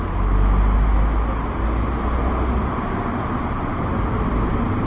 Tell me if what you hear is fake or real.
real